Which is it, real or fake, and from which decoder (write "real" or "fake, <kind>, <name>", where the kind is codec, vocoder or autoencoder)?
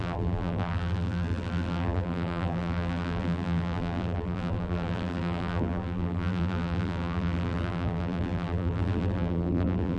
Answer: fake, vocoder, BigVGAN v2